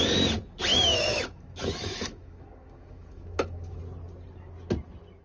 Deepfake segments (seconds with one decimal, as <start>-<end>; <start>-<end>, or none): 0.7-3.8